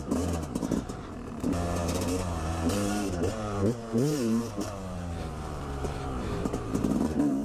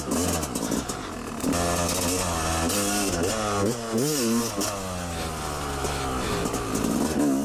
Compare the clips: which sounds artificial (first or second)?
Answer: first